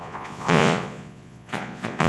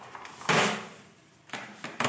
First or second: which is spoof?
first